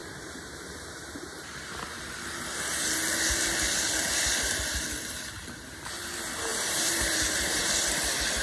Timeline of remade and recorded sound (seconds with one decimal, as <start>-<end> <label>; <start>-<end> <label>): 0.0-1.7 remade; 1.7-6.5 recorded; 6.5-7.6 remade; 7.6-8.4 recorded